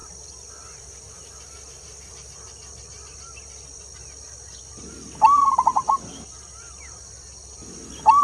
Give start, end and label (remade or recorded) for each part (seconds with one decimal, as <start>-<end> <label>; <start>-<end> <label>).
0.0-8.2 recorded